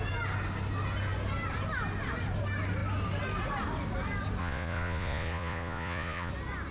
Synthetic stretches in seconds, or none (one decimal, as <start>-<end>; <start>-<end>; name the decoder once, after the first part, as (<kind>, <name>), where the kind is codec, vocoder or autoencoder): 4.4-6.3 (vocoder, Vocos)